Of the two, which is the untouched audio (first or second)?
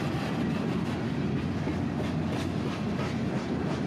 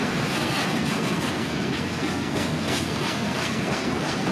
first